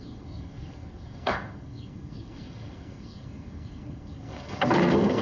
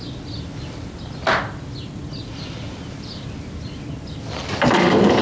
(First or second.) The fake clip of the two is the first